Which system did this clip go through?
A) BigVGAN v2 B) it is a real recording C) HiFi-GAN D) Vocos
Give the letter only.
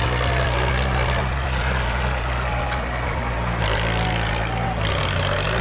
B